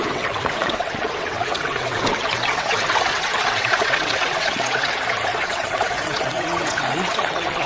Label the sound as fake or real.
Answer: fake